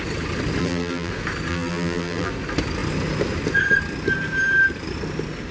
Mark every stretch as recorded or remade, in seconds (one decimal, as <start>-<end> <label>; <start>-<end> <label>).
0.0-0.6 recorded; 0.6-1.1 remade; 1.1-1.5 recorded; 1.5-2.3 remade; 2.3-5.5 recorded